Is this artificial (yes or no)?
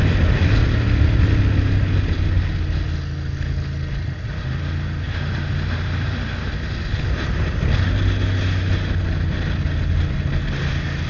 no